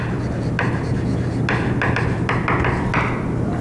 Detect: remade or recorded recorded